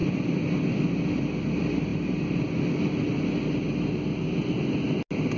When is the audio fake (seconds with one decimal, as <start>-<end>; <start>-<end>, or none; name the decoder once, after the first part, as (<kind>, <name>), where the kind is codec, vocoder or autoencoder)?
none